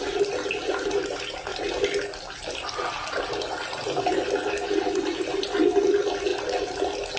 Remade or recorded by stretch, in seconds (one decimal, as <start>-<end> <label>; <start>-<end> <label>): 0.0-7.2 recorded